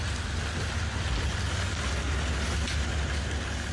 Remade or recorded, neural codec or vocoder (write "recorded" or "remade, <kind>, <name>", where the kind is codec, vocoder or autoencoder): recorded